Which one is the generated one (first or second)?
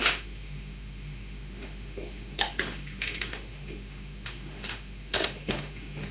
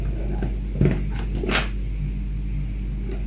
first